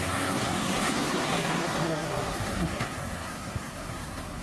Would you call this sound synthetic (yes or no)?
yes